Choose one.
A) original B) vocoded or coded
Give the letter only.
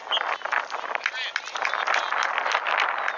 A